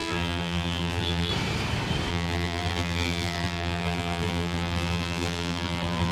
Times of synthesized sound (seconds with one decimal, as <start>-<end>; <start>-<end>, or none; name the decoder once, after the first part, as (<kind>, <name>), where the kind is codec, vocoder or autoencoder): 0.0-1.3 (vocoder, BigVGAN v2); 2.1-6.1